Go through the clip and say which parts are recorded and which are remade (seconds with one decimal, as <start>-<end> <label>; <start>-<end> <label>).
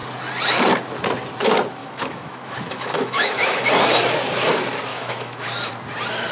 0.0-1.8 recorded; 1.8-3.7 remade; 3.7-4.9 recorded; 4.9-5.7 remade; 5.7-6.3 recorded